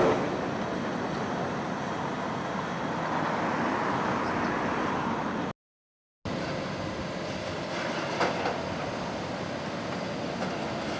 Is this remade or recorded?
recorded